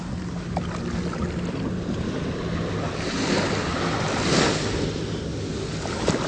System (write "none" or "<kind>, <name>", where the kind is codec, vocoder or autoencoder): none